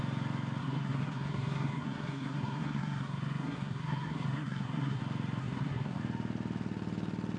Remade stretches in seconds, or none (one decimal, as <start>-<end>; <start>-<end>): 0.6-5.0; 5.4-6.0